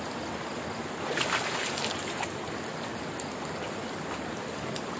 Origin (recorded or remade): recorded